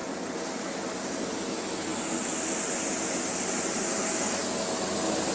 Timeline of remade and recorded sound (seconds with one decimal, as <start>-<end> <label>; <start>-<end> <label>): 0.0-5.3 recorded